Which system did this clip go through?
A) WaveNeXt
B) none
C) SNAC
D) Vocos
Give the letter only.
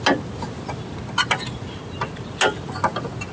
B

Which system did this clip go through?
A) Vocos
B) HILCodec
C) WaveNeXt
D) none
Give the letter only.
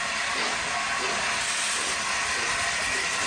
D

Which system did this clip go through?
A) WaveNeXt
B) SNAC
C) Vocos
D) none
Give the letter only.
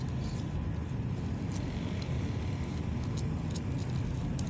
D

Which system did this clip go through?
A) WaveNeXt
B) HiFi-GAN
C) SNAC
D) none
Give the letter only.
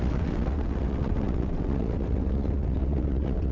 A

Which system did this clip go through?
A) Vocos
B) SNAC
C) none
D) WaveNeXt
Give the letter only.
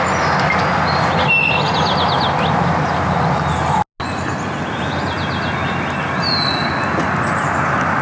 C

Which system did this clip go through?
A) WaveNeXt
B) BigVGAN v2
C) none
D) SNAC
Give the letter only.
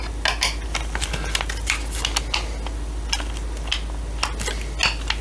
C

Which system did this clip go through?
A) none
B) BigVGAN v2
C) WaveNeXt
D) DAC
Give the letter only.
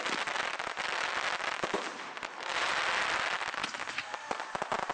A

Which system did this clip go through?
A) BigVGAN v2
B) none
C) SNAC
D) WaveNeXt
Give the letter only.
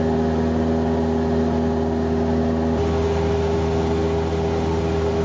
B